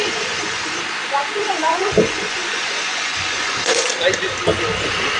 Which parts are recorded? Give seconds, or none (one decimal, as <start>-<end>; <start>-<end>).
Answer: 0.8-1.4; 3.9-5.2